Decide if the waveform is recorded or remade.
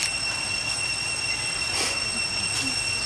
recorded